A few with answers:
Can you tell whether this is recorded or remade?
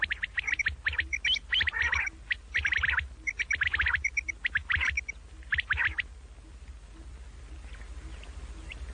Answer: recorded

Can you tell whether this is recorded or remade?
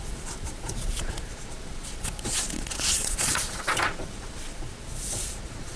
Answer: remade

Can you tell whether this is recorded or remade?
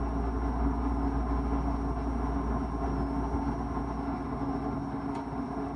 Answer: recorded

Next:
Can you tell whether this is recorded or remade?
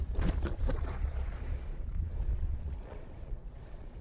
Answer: remade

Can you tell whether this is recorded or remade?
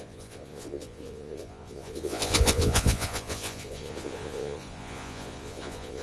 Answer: remade